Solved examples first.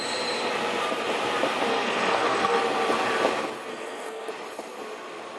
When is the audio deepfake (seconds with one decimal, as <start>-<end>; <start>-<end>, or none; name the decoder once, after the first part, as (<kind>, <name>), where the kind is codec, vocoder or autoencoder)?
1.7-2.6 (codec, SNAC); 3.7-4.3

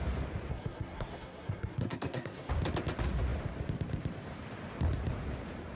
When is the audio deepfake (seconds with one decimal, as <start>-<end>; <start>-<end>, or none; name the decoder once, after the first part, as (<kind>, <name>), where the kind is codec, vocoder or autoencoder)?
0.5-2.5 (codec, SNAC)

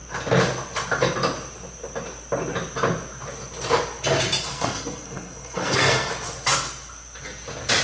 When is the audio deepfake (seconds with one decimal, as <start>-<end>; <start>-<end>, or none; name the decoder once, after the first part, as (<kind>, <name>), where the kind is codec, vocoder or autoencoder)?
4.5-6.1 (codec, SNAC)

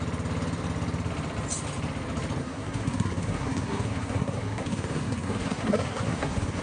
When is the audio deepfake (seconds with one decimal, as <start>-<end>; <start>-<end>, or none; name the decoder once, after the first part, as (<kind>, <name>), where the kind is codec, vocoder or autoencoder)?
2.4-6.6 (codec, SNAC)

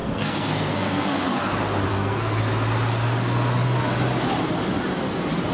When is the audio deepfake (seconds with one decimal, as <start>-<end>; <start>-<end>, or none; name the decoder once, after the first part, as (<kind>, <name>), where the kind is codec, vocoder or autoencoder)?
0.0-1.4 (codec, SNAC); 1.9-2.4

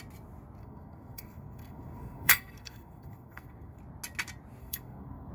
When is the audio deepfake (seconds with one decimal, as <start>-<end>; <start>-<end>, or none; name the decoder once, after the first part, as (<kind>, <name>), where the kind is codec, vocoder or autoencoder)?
0.6-3.8 (codec, SNAC); 4.6-5.3

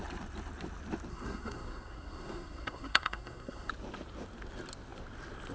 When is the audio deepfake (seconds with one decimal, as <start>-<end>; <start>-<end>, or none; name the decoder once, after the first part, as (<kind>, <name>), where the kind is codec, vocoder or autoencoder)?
1.1-3.7 (codec, SNAC)

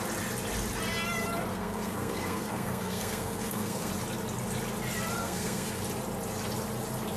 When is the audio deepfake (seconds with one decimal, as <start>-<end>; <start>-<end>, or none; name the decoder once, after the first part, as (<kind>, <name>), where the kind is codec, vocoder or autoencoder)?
1.5-3.9 (codec, SNAC); 5.2-5.8